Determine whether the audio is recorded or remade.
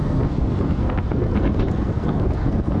remade